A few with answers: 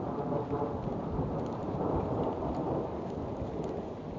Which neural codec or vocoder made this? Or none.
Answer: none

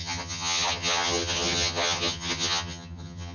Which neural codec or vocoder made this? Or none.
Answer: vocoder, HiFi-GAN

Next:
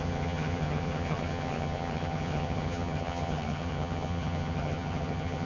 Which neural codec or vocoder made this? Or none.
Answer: vocoder, HiFi-GAN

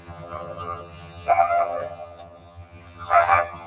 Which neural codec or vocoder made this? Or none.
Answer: vocoder, HiFi-GAN